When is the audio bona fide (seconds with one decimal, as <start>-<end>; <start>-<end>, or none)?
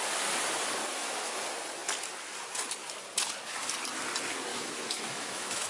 0.0-0.8; 1.3-4.5